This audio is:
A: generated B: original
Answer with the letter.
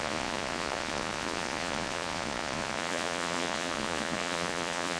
A